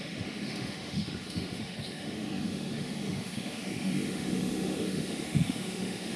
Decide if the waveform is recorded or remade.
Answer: remade